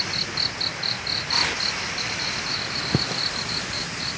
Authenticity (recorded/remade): recorded